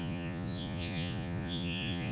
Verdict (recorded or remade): remade